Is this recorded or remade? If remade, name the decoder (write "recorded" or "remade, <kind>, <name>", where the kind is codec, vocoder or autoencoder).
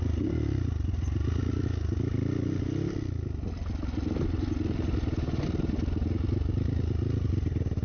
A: recorded